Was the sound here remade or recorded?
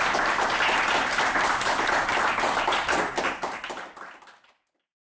recorded